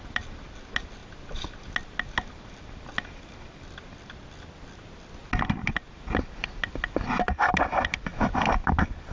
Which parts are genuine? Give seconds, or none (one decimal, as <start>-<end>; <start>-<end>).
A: 0.0-9.1